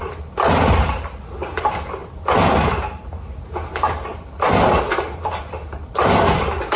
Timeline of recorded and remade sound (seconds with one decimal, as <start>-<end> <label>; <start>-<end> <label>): 0.0-6.8 recorded